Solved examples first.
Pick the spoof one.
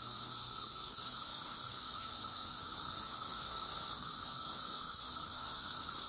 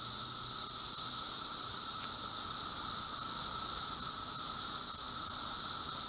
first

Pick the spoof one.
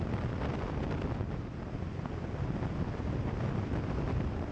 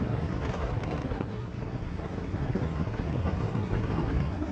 second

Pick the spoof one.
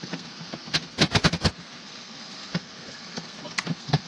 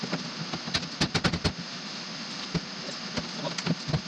first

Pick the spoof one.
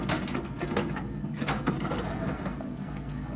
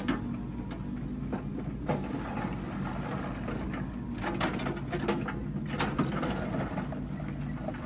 first